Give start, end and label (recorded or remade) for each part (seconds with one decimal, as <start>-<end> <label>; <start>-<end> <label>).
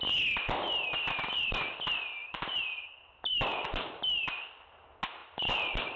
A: 0.0-2.2 recorded; 2.2-2.8 remade; 2.8-3.5 recorded; 3.5-4.2 remade; 4.2-5.2 recorded; 5.2-6.0 remade